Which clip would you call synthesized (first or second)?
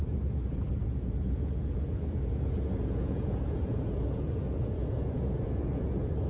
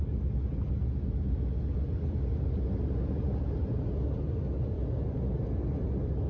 first